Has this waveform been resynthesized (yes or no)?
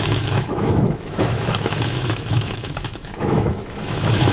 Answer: yes